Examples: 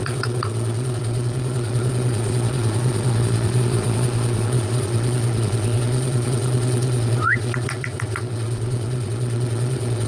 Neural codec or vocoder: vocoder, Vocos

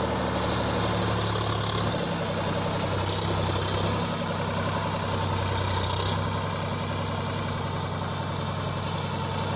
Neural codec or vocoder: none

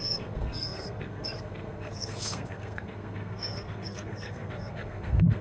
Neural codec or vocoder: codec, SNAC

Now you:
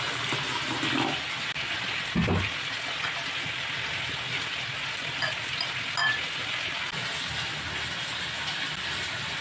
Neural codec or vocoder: none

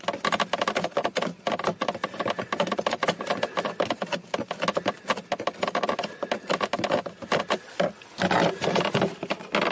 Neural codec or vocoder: none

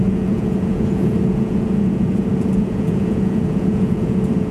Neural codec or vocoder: vocoder, Vocos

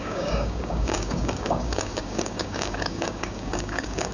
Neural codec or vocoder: codec, DAC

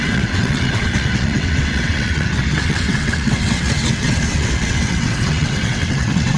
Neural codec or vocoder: vocoder, WaveNeXt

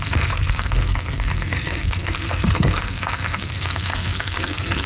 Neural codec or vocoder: codec, SNAC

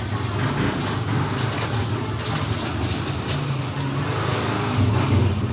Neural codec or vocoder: none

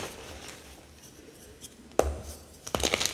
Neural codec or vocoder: none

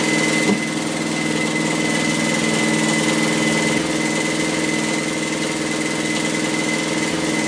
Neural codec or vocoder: none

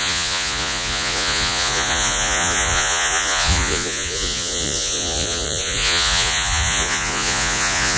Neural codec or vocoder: vocoder, Vocos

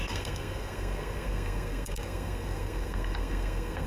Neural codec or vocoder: codec, SNAC